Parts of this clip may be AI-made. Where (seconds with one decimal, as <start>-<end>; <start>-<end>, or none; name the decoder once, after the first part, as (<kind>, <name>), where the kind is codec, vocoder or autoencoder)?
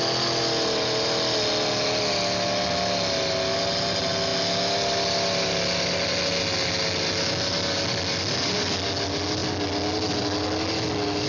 none